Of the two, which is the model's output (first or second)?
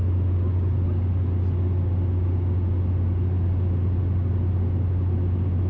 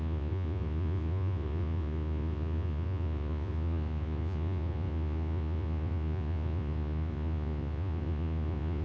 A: second